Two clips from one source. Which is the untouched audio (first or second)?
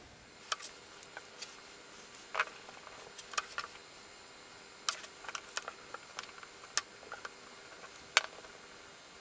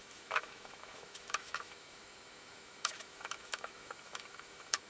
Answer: first